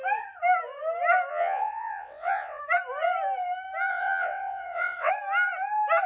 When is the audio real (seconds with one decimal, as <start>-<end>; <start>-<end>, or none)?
0.0-1.3; 2.6-3.9; 5.1-6.1